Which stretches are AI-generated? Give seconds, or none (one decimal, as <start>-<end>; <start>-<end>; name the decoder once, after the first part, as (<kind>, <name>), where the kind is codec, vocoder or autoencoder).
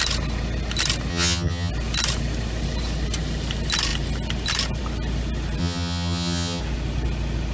1.1-1.7 (vocoder, HiFi-GAN); 5.6-6.6